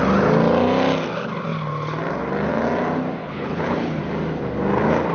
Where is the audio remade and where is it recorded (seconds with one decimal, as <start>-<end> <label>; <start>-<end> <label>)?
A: 0.0-3.2 recorded; 3.2-4.0 remade; 4.0-5.1 recorded